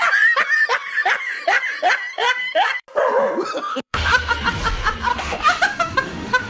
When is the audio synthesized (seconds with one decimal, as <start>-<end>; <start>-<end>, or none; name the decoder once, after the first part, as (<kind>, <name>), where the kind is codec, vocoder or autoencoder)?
3.7-4.3 (autoencoder, DAC-VAE); 5.1-6.5